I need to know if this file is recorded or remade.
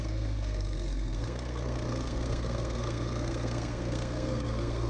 remade